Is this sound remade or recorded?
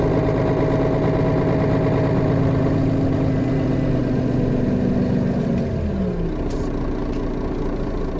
recorded